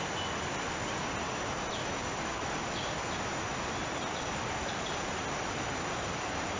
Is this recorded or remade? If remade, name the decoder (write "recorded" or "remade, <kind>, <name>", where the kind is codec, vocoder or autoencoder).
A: recorded